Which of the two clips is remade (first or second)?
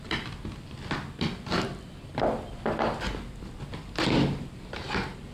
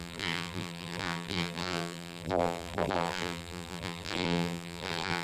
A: second